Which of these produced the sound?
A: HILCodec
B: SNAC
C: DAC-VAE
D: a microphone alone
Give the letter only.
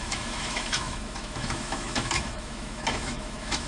C